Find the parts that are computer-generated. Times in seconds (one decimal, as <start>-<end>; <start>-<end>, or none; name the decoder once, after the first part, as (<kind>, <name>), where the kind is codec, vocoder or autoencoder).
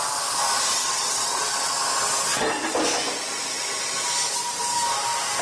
0.8-1.8 (vocoder, WaveNeXt)